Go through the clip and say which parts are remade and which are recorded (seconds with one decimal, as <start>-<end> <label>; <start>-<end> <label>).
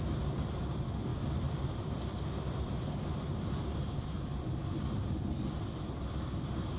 0.0-3.1 recorded; 3.1-3.9 remade; 3.9-6.8 recorded